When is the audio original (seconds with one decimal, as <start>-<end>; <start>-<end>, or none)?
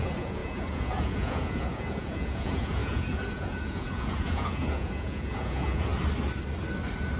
5.9-7.2